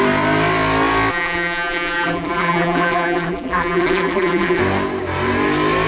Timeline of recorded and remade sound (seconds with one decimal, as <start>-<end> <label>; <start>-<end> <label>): 0.0-1.1 recorded; 1.1-4.6 remade; 4.6-5.9 recorded